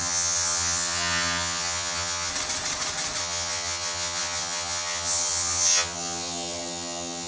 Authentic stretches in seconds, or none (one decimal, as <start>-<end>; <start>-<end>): 2.3-3.2